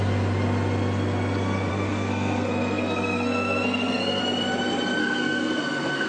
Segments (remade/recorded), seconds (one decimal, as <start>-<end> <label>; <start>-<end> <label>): 0.0-1.7 recorded; 1.7-4.2 remade; 4.2-5.0 recorded; 5.0-6.1 remade